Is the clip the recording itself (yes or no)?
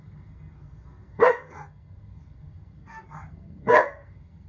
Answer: no